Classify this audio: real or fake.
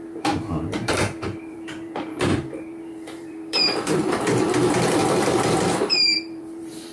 fake